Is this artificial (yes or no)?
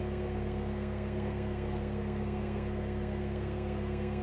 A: yes